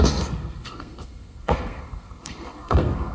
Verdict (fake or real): fake